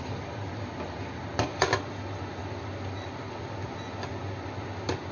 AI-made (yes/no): no